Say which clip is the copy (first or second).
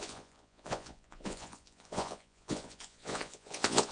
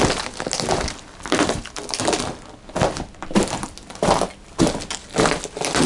first